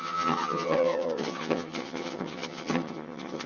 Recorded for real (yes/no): no